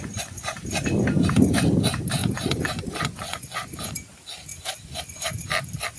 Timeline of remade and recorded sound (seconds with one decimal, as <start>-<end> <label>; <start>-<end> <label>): 0.0-0.6 remade; 0.6-2.2 recorded; 2.2-3.9 remade; 3.9-6.0 recorded